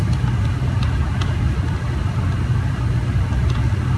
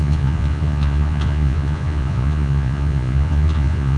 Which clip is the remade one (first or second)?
second